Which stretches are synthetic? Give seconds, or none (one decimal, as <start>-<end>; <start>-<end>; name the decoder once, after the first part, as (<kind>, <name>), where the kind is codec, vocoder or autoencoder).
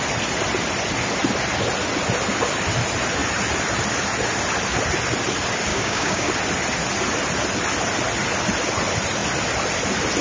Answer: 5.7-6.3 (codec, DAC)